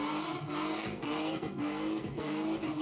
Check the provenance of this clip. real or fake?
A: fake